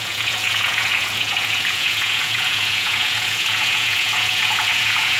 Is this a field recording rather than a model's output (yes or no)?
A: no